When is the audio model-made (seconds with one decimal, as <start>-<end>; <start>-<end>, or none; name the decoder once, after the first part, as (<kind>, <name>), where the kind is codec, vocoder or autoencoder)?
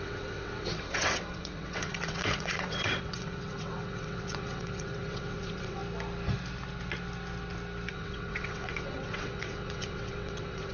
0.0-5.8 (vocoder, WaveNeXt); 7.9-10.7